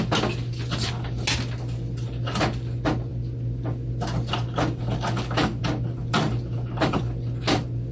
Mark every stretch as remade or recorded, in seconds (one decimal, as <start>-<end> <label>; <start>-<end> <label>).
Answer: 0.0-6.0 recorded; 6.0-7.0 remade; 7.0-7.9 recorded